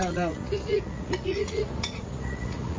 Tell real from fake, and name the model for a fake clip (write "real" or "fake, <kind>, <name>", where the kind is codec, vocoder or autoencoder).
fake, vocoder, Vocos